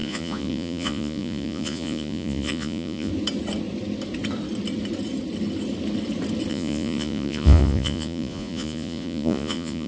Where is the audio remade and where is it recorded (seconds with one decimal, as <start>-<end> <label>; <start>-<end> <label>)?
0.0-3.1 remade; 3.1-6.5 recorded; 6.5-9.9 remade